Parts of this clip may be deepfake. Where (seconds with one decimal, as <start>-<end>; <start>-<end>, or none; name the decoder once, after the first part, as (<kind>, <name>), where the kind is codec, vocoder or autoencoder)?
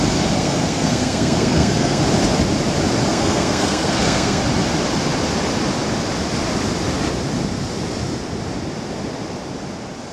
0.4-2.0 (codec, SNAC); 3.1-4.4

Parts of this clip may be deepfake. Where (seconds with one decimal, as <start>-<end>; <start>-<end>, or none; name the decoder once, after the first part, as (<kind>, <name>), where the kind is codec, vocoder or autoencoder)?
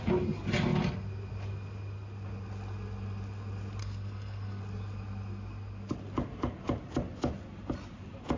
3.8-4.6 (codec, SNAC)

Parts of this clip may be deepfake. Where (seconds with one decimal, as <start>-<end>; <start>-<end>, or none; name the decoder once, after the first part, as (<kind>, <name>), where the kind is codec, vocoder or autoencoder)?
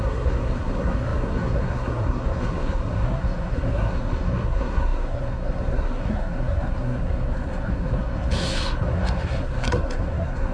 0.0-10.5 (codec, SNAC)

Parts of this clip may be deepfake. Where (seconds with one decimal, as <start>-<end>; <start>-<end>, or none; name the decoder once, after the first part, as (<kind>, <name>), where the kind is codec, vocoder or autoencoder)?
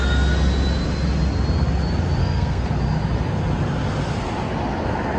2.2-2.7 (codec, SNAC)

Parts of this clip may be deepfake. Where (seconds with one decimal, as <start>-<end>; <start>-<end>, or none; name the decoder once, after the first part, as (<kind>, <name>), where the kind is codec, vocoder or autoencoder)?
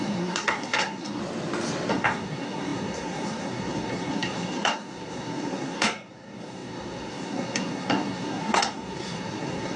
0.0-1.2 (codec, SNAC); 1.9-9.8